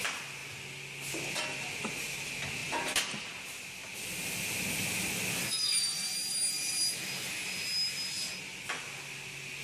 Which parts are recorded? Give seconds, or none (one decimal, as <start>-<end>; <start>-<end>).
0.0-9.6